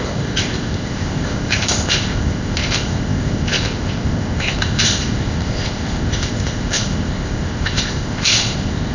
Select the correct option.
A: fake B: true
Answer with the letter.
A